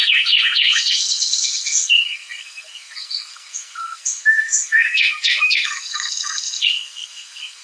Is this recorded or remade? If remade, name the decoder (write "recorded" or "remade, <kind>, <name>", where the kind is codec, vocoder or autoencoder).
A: remade, codec, SNAC